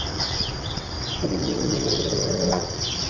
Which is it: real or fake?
fake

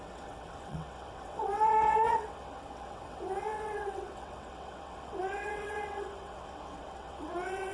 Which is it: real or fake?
fake